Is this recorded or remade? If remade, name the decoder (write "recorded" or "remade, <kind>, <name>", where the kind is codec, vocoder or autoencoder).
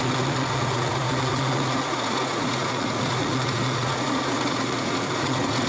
remade, vocoder, Vocos